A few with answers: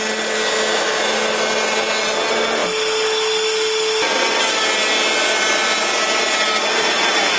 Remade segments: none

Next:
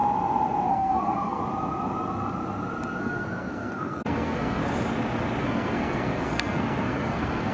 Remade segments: 0.7-1.4 (codec, SNAC); 3.0-4.6; 5.4-7.5

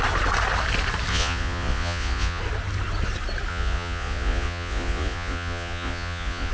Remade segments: 1.1-2.4 (vocoder, Vocos); 3.5-6.5

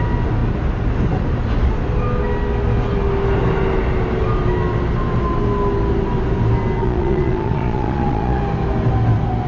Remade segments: 6.8-8.4 (vocoder, Vocos)